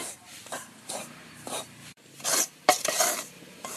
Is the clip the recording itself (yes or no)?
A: no